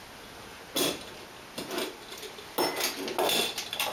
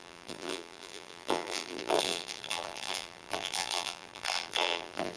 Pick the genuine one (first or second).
first